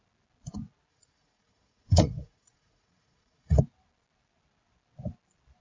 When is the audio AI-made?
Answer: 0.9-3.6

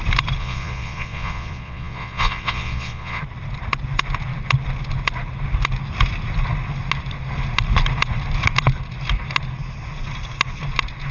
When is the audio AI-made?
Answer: 0.4-3.2

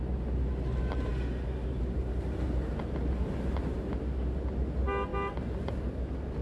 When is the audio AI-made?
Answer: none

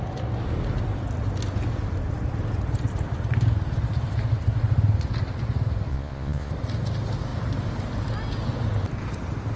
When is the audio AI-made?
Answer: 5.9-6.5

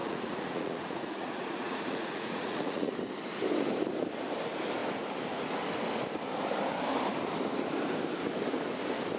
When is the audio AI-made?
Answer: 0.0-2.9

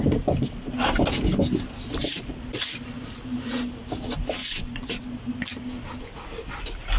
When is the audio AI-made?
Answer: 4.4-4.9